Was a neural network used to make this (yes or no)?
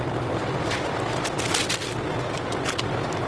yes